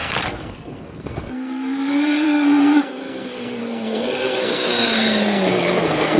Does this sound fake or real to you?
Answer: fake